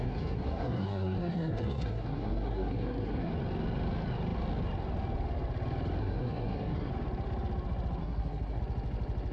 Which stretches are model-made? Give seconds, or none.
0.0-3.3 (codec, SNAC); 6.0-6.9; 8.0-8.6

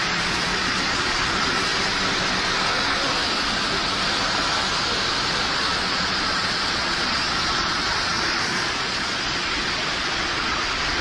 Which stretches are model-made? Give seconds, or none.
0.0-1.7 (vocoder, Vocos); 5.3-11.0

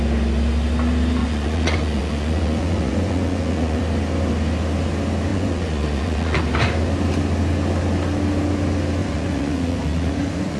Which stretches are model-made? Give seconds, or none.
1.2-3.8 (vocoder, Vocos); 5.3-6.4; 9.0-10.6

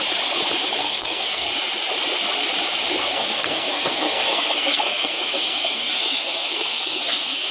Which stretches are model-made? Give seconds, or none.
0.8-1.5 (codec, SNAC); 3.0-7.5

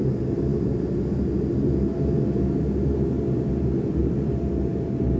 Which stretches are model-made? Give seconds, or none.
4.0-4.6 (vocoder, BigVGAN v2)